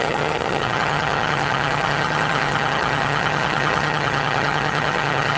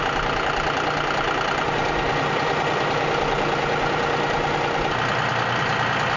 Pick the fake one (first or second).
first